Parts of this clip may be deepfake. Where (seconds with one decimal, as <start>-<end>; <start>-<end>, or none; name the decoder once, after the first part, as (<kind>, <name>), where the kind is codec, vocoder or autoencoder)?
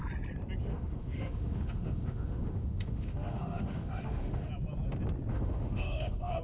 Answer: 0.7-4.5 (autoencoder, DAC-VAE); 5.3-6.4